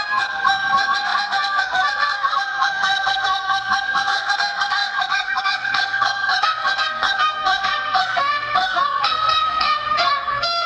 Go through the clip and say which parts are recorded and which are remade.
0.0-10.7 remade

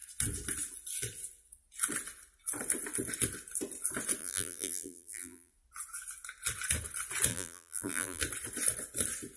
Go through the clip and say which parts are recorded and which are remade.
0.0-4.2 recorded; 4.2-5.5 remade; 5.5-7.3 recorded; 7.3-8.2 remade; 8.2-9.4 recorded

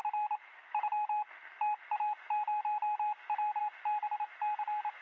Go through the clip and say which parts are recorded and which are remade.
0.0-5.0 recorded